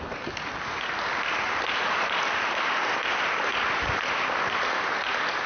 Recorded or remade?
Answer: recorded